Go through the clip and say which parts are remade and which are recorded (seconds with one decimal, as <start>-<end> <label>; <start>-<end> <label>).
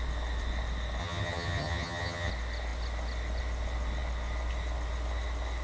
0.0-1.0 recorded; 1.0-2.3 remade; 2.3-5.6 recorded